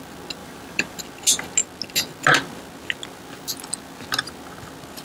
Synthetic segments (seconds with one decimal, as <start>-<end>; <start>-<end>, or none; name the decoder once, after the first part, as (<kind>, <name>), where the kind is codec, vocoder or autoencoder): 0.4-1.0 (vocoder, BigVGAN v2)